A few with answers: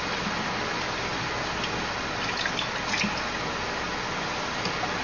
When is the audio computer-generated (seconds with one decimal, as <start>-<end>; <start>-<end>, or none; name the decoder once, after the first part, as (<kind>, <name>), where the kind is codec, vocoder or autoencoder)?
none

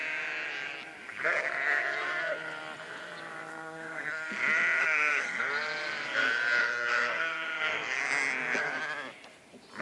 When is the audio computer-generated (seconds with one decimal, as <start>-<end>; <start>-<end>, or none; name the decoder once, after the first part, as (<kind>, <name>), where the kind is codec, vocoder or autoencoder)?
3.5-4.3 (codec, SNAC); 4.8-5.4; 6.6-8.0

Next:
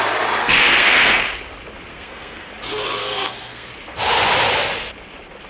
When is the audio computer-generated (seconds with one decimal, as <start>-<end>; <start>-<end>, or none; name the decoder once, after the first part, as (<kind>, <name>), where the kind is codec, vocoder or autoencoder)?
0.4-1.2 (codec, SNAC); 1.9-2.5; 3.0-3.7

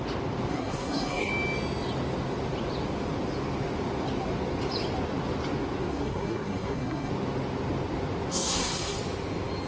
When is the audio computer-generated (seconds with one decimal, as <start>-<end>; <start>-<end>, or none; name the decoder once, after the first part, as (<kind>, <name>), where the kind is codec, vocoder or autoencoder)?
0.5-1.3 (codec, SNAC); 5.9-7.1; 8.3-9.0